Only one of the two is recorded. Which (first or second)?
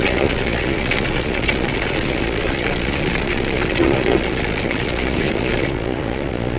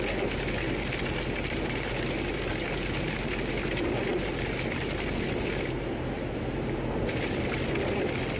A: second